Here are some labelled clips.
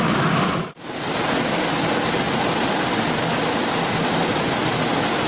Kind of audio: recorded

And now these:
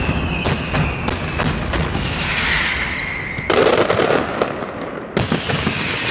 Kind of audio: recorded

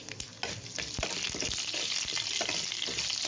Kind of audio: recorded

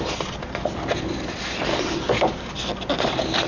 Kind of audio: recorded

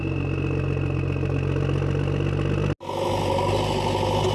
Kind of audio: recorded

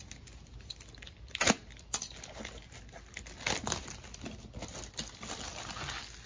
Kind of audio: recorded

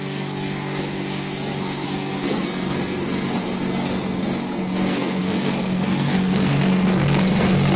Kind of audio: remade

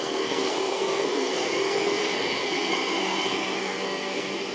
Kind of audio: remade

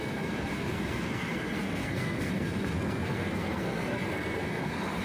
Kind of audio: remade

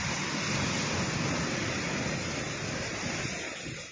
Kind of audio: recorded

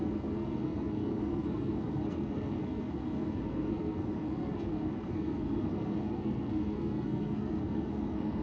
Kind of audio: remade